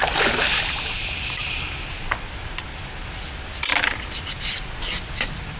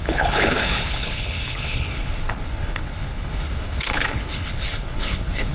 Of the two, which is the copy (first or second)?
second